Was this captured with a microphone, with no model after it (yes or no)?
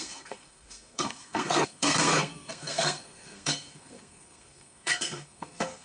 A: no